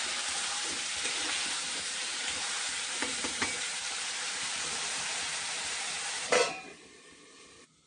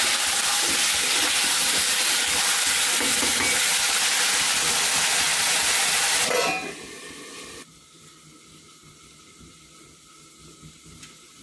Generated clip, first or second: first